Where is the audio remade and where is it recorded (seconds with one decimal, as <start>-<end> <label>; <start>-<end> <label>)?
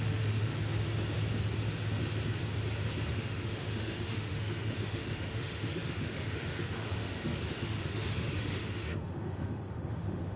0.0-0.5 remade; 0.5-3.1 recorded; 3.1-10.4 remade